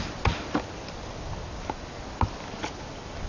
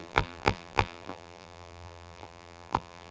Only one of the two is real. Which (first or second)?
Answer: first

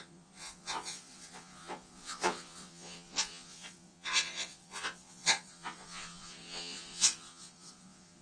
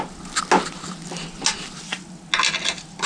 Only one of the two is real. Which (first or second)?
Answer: second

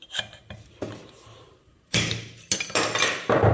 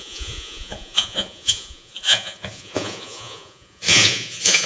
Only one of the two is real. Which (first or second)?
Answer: first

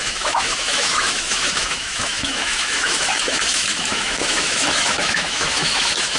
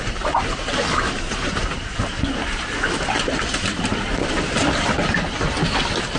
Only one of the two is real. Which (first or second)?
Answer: second